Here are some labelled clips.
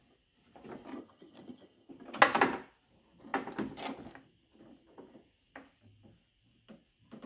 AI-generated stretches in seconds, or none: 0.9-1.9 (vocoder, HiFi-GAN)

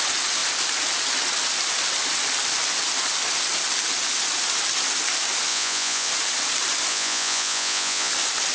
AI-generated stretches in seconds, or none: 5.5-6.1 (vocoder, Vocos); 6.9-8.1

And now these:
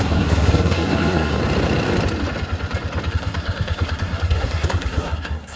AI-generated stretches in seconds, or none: 0.0-1.4 (codec, SNAC); 3.1-5.6